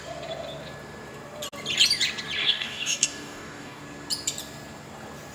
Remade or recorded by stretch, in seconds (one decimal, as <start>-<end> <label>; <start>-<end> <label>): 0.0-2.4 recorded; 2.4-3.8 remade; 3.8-5.3 recorded